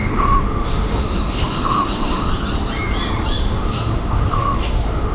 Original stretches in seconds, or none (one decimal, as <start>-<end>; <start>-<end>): 2.3-3.4